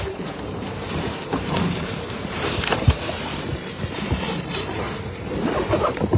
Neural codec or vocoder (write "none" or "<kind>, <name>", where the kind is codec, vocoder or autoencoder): vocoder, BigVGAN v2